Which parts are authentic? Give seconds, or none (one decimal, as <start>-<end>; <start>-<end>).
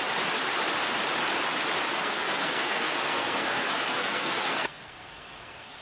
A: 0.0-1.9